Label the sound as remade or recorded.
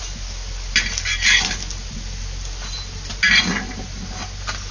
recorded